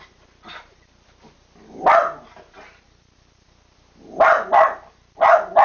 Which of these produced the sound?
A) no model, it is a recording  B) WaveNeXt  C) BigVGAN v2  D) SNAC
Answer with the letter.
A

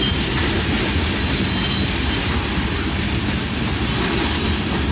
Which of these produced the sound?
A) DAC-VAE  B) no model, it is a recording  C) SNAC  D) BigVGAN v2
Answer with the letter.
B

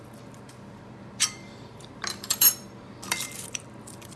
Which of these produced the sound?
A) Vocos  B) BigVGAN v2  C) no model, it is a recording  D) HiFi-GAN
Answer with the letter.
B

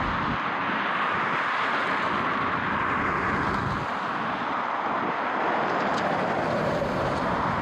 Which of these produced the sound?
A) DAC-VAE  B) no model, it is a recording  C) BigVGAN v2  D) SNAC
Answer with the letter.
B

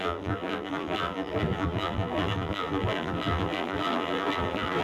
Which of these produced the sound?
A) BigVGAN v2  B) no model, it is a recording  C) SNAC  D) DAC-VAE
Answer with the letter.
A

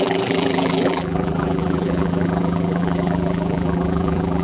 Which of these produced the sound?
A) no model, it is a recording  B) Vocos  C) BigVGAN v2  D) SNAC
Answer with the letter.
C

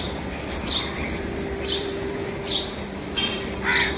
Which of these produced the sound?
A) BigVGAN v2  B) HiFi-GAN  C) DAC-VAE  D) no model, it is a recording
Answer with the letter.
A